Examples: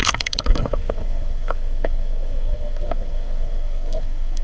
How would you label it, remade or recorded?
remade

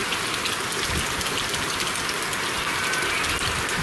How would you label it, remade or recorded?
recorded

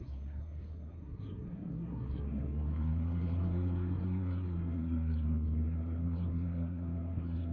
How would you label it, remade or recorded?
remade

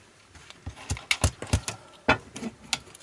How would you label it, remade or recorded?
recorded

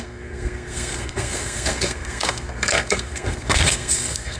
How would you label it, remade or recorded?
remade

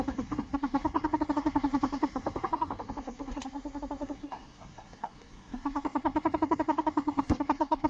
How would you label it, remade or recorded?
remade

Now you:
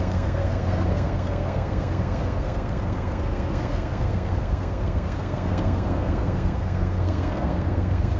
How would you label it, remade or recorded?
remade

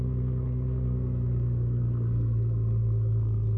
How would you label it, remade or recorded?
remade